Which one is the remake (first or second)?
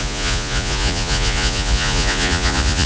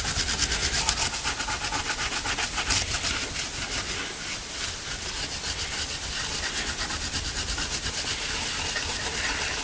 first